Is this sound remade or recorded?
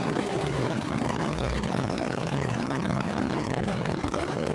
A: remade